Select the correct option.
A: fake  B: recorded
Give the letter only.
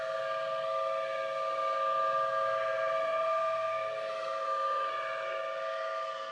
A